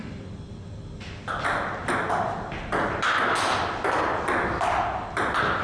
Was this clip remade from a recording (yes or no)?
no